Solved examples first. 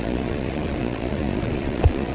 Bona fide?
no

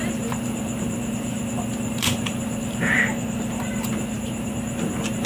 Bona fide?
no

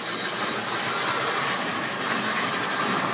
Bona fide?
yes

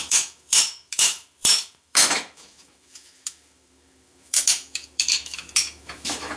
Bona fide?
no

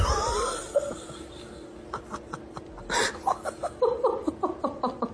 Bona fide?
yes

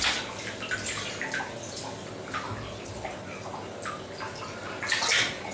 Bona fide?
yes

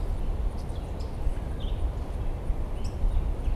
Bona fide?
yes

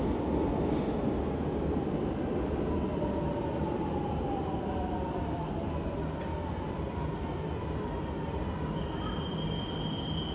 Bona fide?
yes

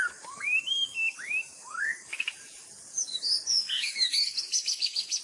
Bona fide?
no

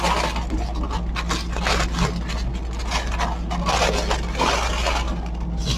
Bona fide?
yes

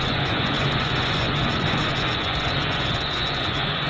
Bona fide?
no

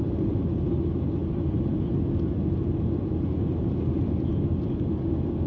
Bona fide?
yes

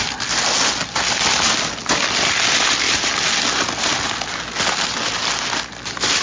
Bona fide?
yes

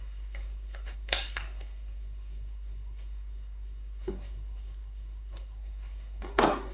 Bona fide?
no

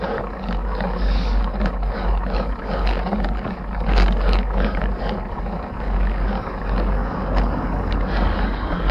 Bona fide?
no